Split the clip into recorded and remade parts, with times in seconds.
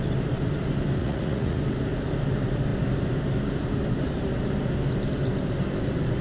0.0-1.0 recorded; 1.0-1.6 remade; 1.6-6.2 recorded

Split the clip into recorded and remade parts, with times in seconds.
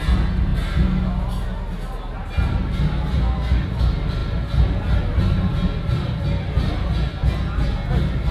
0.0-8.3 recorded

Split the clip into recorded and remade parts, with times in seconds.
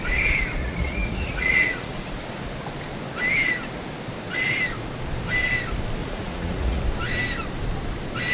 0.0-0.6 recorded; 0.6-2.1 remade; 2.1-6.0 recorded; 6.0-6.8 remade; 6.8-8.3 recorded